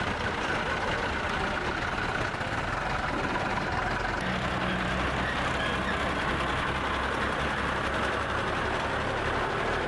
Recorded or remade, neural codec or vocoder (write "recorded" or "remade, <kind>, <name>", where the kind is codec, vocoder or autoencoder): recorded